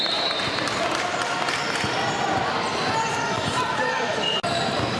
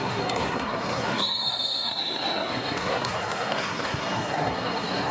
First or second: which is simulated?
second